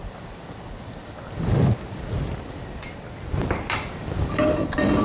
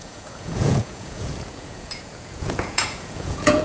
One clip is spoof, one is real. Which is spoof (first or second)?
second